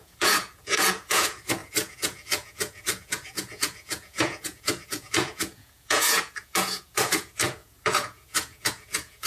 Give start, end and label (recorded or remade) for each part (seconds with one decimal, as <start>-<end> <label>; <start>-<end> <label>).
0.0-9.3 remade